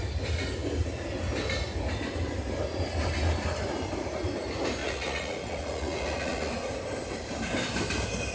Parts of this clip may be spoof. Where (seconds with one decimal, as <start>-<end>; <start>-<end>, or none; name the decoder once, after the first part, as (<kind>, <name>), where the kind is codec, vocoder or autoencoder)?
4.8-6.5 (vocoder, Vocos)

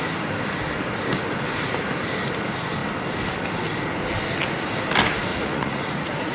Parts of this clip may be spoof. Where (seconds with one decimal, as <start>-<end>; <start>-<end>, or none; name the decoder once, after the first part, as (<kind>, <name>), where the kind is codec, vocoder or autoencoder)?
5.3-6.3 (vocoder, Vocos)

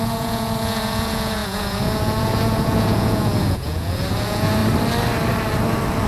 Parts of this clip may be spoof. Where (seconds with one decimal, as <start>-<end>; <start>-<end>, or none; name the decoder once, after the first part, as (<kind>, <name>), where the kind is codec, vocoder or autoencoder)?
0.0-4.6 (vocoder, Vocos)

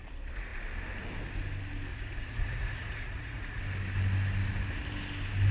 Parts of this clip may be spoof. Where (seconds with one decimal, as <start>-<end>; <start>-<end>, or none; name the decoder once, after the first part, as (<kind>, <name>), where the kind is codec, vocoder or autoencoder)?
1.9-3.6 (vocoder, Vocos)